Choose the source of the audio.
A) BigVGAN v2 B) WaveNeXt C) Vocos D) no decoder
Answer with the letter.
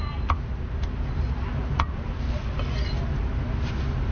D